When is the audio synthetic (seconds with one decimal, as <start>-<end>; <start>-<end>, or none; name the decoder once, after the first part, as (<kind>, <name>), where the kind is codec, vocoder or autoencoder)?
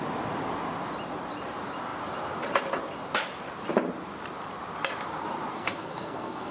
5.5-6.5 (codec, SNAC)